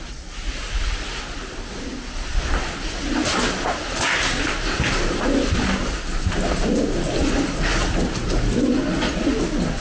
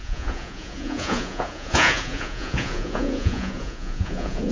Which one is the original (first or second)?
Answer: first